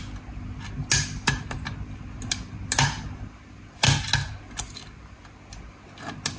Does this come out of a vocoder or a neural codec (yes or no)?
no